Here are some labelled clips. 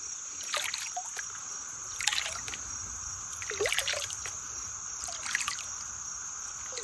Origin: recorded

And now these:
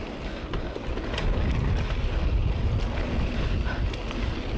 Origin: recorded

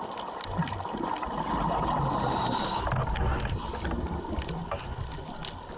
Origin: recorded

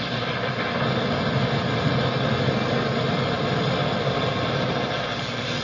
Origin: recorded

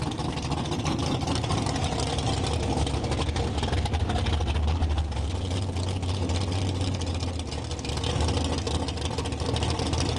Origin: recorded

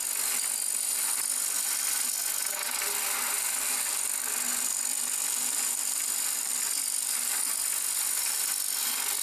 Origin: recorded